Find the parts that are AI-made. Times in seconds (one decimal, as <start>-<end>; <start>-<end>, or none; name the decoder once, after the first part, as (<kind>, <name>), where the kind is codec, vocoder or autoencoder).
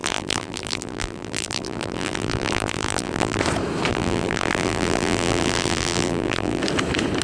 0.0-3.4 (vocoder, BigVGAN v2); 3.9-6.6